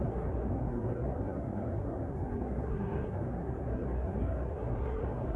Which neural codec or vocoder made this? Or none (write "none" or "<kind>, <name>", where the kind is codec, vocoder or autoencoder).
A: codec, SNAC